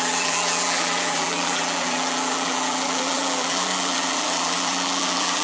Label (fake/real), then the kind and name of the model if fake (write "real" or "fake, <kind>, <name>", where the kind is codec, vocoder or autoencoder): fake, vocoder, BigVGAN v2